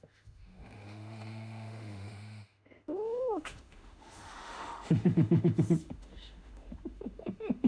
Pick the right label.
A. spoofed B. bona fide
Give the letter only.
A